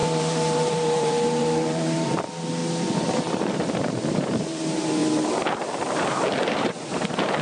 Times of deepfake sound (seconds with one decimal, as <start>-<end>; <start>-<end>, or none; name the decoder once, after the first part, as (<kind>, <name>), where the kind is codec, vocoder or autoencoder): 0.0-2.6 (vocoder, BigVGAN v2); 3.2-5.0; 5.6-7.4

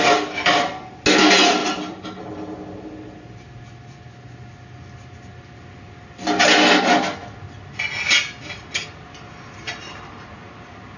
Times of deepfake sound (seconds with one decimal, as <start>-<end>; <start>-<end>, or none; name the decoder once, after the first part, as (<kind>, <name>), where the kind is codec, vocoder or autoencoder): 1.6-2.2 (vocoder, BigVGAN v2)

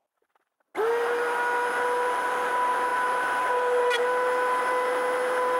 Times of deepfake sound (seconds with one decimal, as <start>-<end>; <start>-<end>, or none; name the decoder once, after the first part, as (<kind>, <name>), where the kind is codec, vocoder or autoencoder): 2.9-3.5 (vocoder, BigVGAN v2)

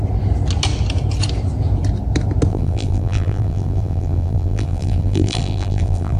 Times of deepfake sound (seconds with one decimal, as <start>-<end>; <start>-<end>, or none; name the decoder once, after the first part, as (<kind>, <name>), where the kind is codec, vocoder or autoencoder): 2.5-6.2 (vocoder, BigVGAN v2)

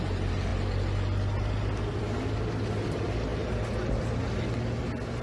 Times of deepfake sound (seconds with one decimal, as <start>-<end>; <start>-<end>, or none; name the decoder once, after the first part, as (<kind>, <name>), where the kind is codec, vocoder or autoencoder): none